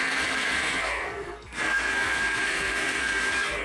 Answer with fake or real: fake